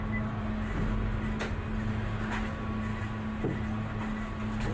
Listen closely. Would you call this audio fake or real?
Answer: real